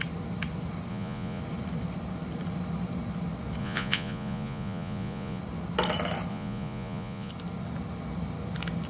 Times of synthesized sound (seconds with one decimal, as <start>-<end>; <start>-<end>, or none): 0.9-1.4; 3.6-5.4; 6.3-7.3